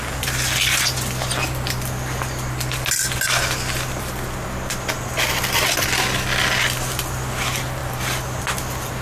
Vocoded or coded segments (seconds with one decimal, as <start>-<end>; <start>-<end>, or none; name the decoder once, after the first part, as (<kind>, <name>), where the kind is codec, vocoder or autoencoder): none